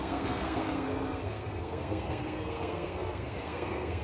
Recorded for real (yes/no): no